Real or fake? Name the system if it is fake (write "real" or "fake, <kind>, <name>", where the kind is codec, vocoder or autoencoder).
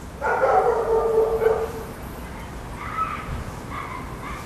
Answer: real